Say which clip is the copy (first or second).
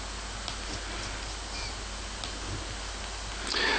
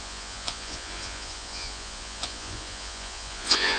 second